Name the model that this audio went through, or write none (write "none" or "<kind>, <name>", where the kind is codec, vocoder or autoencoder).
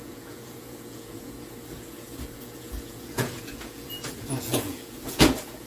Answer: vocoder, Vocos